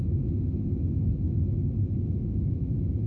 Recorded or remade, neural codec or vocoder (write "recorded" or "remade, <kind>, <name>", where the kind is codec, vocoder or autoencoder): remade, autoencoder, DAC-VAE